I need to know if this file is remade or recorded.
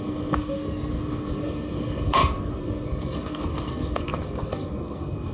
remade